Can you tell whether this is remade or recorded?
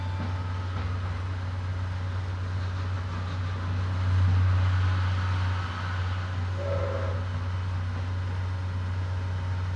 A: recorded